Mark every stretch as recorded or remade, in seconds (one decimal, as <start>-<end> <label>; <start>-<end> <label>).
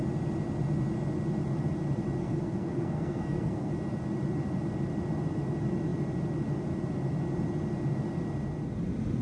0.0-2.2 recorded; 2.2-3.7 remade; 3.7-9.2 recorded